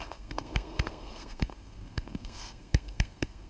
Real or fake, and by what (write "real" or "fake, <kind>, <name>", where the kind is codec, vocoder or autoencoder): fake, codec, SNAC